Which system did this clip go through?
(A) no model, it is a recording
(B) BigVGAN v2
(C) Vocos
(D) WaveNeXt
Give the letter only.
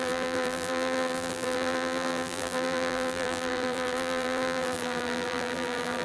B